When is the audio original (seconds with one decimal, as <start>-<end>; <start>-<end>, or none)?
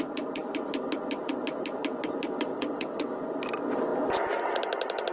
0.0-2.5; 3.1-5.1